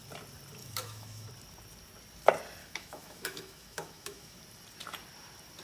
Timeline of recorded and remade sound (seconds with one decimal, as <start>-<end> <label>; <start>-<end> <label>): 0.0-0.6 recorded; 0.6-1.3 remade; 1.3-2.6 recorded; 2.6-4.4 remade; 4.4-5.6 recorded